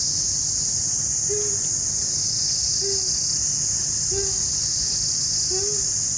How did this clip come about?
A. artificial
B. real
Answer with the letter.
B